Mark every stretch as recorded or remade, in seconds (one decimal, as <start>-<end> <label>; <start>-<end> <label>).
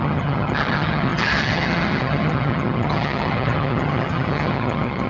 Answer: 0.0-5.1 remade